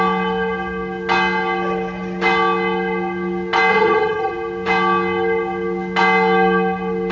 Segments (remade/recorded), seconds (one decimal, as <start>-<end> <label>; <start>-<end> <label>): 0.0-3.7 recorded; 3.7-4.3 remade; 4.3-7.1 recorded